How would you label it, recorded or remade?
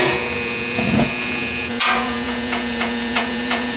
remade